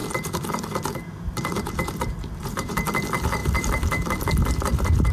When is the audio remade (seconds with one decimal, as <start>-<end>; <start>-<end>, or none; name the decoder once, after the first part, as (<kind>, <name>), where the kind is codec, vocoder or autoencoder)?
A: 0.0-5.1 (vocoder, BigVGAN v2)